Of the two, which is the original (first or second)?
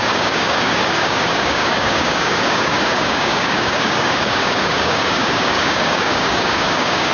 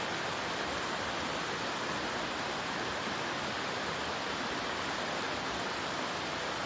second